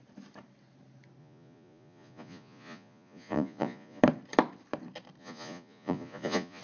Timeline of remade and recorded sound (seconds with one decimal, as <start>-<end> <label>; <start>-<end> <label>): 0.0-1.2 recorded; 1.2-4.0 remade; 4.0-5.2 recorded; 5.2-6.6 remade